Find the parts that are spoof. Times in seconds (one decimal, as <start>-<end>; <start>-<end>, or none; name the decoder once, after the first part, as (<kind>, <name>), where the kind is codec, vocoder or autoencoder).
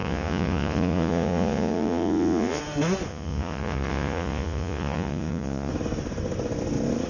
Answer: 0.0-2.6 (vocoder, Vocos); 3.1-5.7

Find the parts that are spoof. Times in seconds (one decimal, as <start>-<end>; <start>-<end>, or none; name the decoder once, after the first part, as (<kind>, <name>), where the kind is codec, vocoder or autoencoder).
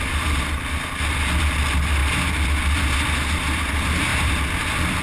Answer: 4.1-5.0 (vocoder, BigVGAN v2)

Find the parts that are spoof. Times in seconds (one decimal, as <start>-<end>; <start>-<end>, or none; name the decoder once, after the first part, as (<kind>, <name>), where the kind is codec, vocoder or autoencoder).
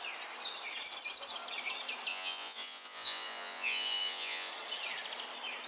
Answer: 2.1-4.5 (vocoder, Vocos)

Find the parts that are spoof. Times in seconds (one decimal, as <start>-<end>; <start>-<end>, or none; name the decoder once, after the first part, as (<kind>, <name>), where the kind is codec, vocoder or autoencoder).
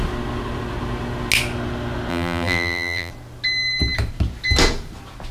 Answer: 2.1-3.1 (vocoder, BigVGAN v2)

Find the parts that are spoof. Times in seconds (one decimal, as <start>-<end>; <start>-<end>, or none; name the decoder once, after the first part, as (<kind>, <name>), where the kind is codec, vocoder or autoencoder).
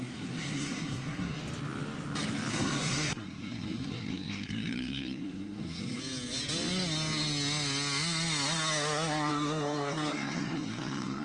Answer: 0.0-1.4 (codec, SNAC); 2.5-6.0; 9.3-11.2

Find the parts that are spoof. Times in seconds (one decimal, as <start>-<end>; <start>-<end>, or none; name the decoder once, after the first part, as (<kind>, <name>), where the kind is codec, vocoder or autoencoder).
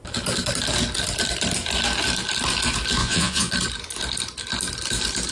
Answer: 3.0-3.5 (vocoder, Vocos)